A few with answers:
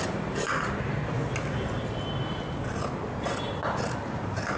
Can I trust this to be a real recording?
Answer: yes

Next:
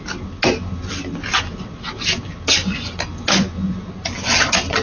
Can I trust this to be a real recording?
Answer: yes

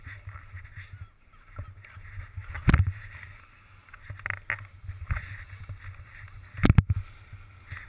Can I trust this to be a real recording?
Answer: yes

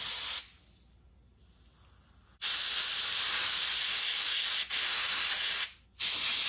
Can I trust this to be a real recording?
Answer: yes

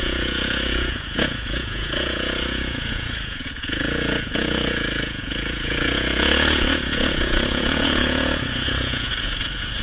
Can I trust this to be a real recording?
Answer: no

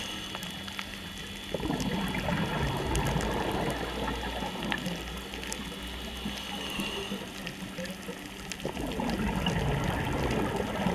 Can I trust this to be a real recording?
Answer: yes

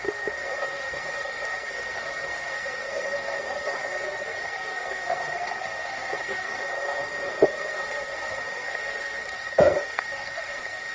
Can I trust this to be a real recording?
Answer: no